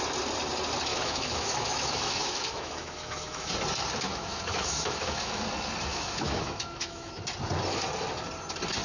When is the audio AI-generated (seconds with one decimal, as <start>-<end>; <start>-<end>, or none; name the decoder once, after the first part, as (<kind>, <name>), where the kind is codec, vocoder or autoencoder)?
0.9-3.5 (autoencoder, DAC-VAE); 4.1-5.4; 5.9-7.2